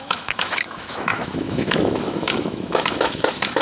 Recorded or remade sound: remade